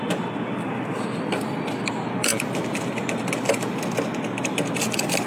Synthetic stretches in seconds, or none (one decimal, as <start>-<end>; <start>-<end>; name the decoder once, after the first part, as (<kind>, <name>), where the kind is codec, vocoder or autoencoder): 0.0-2.3 (vocoder, BigVGAN v2); 4.8-5.3